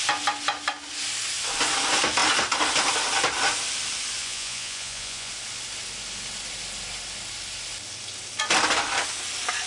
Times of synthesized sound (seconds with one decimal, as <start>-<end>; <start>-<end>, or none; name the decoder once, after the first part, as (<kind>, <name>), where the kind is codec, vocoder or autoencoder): 4.2-5.3 (vocoder, Vocos)